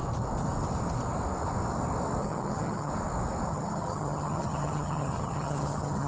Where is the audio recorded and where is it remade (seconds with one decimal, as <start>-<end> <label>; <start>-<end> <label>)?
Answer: 0.0-2.2 recorded; 2.2-2.9 remade; 2.9-3.5 recorded; 3.5-6.1 remade